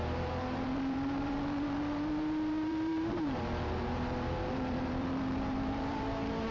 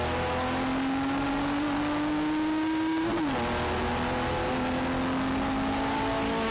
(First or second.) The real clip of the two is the second